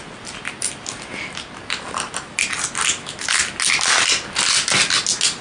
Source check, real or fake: real